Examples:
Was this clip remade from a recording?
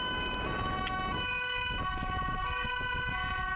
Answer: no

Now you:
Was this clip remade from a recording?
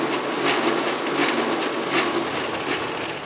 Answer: no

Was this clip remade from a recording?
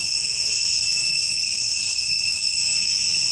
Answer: yes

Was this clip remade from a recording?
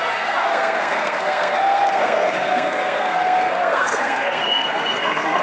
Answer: yes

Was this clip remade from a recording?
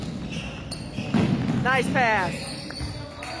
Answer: no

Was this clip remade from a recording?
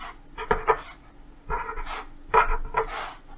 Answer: no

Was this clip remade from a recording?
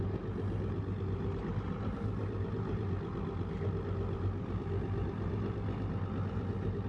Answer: no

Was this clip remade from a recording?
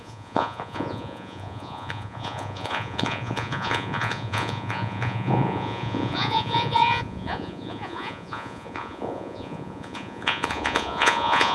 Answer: yes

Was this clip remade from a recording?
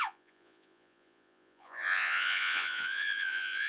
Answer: yes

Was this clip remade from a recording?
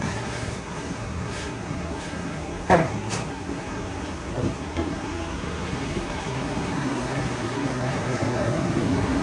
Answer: yes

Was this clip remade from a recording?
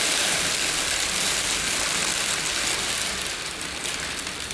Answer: no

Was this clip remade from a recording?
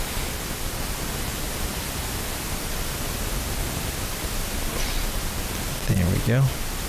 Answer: no